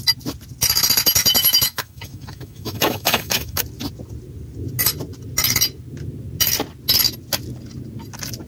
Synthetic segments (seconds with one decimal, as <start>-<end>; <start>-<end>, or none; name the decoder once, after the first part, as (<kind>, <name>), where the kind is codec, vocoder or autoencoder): 1.2-3.6 (autoencoder, DAC-VAE)